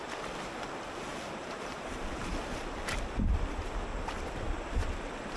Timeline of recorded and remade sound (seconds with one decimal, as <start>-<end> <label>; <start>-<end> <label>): 0.0-1.1 recorded; 1.1-2.6 remade; 2.6-5.4 recorded